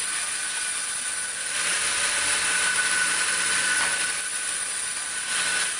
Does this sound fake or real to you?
real